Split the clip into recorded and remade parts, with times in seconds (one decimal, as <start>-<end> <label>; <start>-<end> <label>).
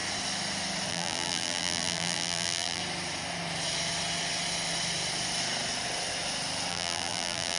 0.0-0.9 recorded; 0.9-2.8 remade; 2.8-6.7 recorded; 6.7-7.6 remade